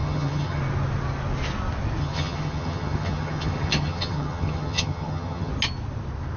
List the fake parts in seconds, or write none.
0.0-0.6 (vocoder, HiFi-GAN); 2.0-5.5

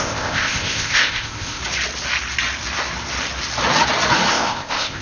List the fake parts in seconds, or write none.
0.0-1.6 (codec, ZipCodec); 4.3-5.0

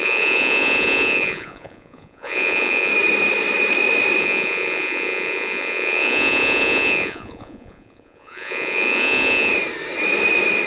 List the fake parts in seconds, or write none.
0.0-2.9 (vocoder, Vocos); 4.2-9.5

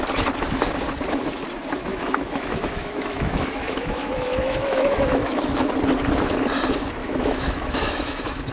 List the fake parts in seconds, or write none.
1.9-5.7 (autoencoder, DAC-VAE); 7.0-8.5

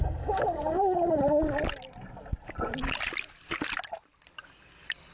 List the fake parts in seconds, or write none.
none

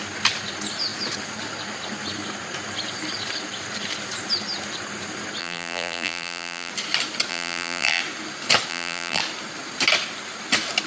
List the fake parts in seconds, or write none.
5.4-6.7 (vocoder, BigVGAN v2); 7.3-8.0; 8.7-9.2

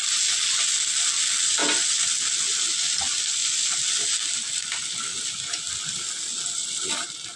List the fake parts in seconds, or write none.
none